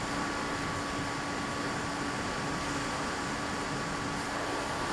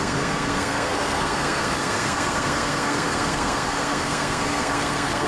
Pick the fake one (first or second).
second